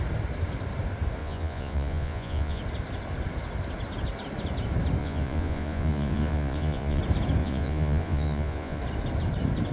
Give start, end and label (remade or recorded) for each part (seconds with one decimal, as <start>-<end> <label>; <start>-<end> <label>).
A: 0.0-1.2 recorded; 1.2-2.6 remade; 2.6-5.0 recorded; 5.0-7.0 remade; 7.0-7.4 recorded; 7.4-8.8 remade; 8.8-9.7 recorded